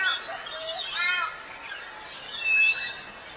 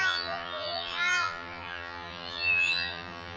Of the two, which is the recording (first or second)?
first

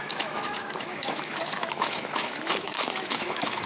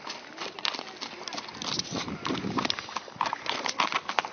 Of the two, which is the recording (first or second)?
second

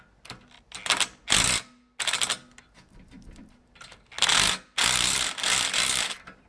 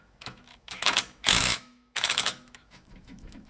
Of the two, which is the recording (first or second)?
first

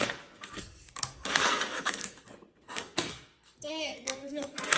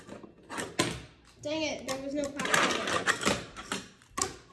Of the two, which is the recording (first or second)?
second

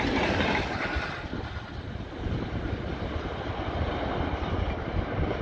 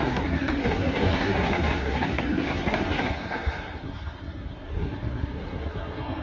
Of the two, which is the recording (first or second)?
first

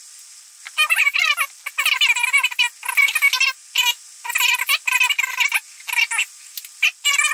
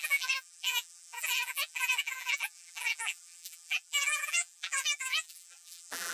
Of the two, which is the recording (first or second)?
first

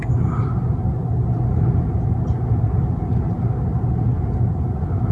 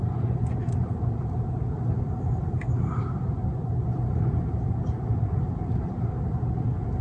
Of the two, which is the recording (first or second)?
first